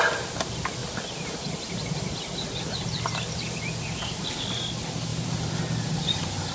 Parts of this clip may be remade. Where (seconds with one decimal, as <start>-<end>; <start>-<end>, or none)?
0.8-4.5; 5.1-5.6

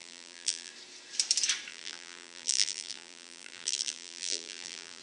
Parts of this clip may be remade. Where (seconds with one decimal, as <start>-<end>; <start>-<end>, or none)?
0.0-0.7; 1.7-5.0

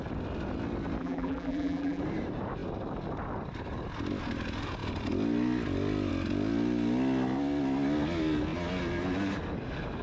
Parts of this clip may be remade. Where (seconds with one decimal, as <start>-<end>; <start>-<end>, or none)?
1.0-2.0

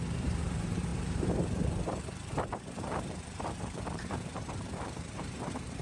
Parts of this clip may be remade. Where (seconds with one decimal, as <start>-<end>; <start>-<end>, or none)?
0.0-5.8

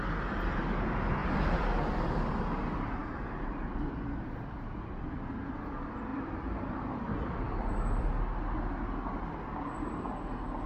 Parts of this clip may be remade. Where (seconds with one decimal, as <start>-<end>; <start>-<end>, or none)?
1.2-2.3; 3.0-5.3; 6.1-8.1

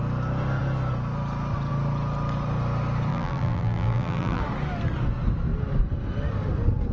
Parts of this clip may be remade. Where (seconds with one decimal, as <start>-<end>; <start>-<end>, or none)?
3.1-4.4